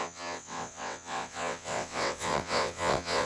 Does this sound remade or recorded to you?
remade